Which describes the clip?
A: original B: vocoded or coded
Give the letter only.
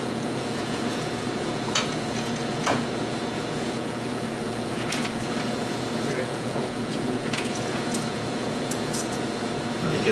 B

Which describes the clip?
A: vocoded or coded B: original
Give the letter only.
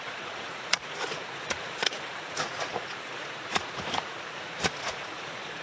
A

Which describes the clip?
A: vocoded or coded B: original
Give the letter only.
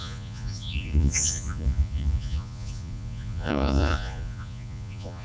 A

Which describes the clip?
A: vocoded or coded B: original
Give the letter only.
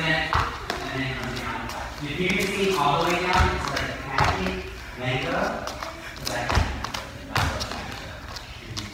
B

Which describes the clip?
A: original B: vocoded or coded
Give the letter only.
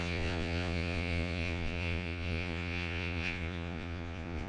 B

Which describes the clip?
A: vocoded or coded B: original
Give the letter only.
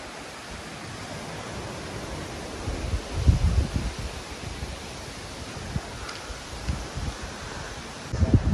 B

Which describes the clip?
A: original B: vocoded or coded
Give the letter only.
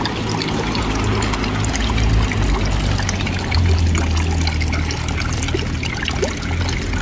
A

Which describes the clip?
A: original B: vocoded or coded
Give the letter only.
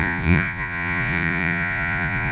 B